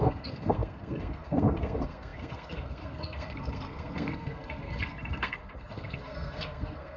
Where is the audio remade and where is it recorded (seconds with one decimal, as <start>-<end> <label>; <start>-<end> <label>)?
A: 0.0-7.0 remade